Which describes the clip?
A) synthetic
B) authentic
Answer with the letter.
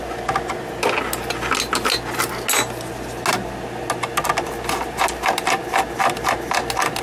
B